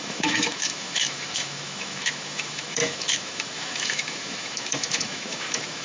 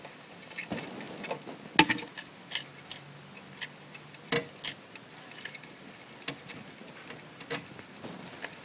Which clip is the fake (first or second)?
first